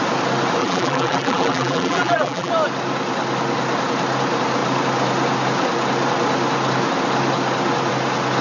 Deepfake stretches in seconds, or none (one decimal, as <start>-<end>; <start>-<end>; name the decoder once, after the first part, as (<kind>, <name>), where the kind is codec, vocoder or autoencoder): 0.6-2.5 (vocoder, BigVGAN v2)